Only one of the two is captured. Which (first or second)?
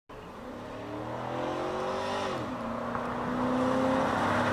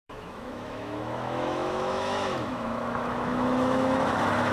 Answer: first